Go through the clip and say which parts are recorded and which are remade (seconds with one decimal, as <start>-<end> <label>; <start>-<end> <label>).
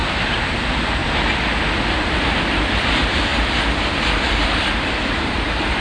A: 0.0-1.0 remade; 1.0-2.9 recorded; 2.9-3.3 remade; 3.3-4.2 recorded; 4.2-5.8 remade